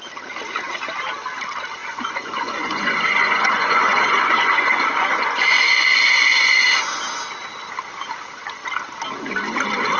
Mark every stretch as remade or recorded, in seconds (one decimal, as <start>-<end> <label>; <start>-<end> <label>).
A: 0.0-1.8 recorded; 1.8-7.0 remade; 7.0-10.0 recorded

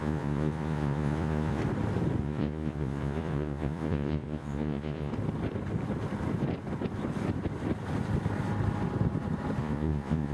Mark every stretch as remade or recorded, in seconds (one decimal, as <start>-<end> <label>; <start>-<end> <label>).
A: 0.0-1.6 remade; 1.6-2.2 recorded; 2.2-5.1 remade; 5.1-9.6 recorded; 9.6-10.3 remade

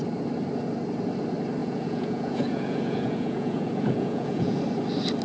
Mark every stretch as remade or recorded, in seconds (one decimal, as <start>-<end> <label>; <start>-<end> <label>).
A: 0.0-1.6 recorded; 1.6-4.6 remade; 4.6-5.2 recorded

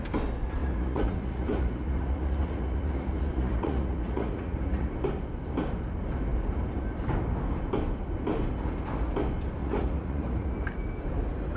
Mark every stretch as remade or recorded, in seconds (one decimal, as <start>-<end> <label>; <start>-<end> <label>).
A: 0.0-0.6 recorded; 0.6-4.9 remade; 4.9-9.6 recorded; 9.6-10.5 remade; 10.5-11.6 recorded

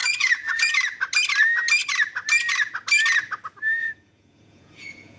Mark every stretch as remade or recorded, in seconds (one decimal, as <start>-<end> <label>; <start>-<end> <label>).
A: 0.0-0.7 remade; 0.7-3.8 recorded; 3.8-5.2 remade

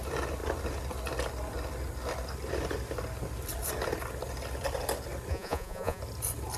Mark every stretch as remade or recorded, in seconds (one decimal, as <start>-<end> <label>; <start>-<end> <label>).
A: 0.0-5.3 recorded; 5.3-6.0 remade; 6.0-6.6 recorded

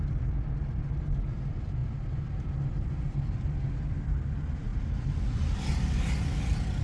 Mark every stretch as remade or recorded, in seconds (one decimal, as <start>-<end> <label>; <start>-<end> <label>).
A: 0.0-6.8 recorded